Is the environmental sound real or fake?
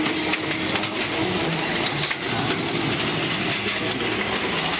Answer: real